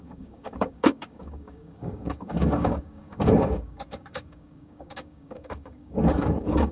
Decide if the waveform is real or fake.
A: fake